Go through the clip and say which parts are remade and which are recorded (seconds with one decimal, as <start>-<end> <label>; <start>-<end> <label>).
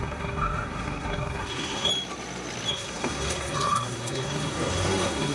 0.0-1.9 remade; 1.9-2.7 recorded; 2.7-5.3 remade